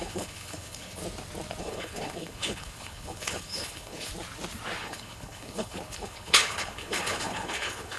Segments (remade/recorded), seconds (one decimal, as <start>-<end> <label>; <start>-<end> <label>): 0.0-1.0 remade; 1.0-1.6 recorded; 1.6-4.1 remade; 4.1-4.8 recorded; 4.8-8.0 remade